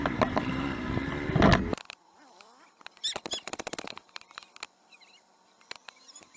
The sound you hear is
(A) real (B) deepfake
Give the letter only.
A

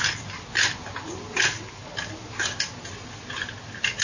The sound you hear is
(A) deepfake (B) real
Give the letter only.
B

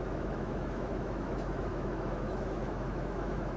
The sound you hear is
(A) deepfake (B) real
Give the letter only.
A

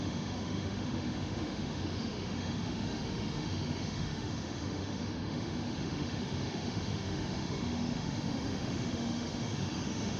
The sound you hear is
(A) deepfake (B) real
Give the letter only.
A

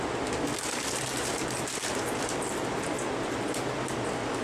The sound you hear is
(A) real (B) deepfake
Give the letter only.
A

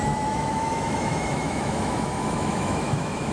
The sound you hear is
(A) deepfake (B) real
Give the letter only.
A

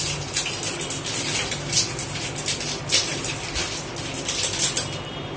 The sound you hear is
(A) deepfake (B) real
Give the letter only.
B